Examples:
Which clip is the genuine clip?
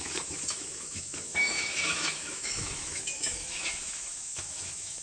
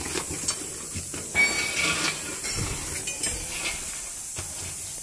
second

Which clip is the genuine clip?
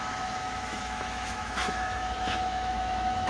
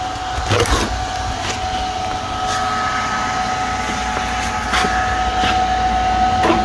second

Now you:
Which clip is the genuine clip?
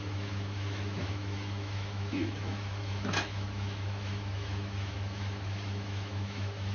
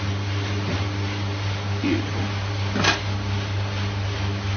second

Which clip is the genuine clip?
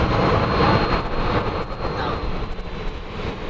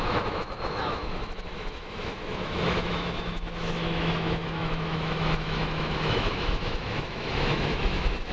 first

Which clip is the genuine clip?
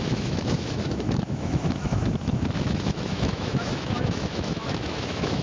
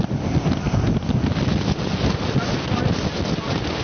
second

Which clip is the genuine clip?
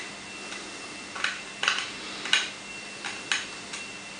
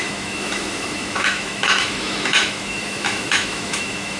first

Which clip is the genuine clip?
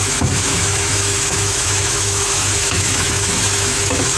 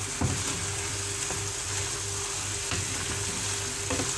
second